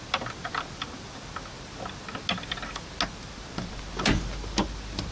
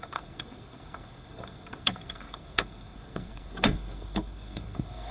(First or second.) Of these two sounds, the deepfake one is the second